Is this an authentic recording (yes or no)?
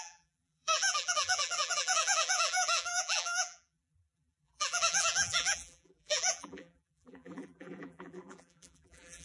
no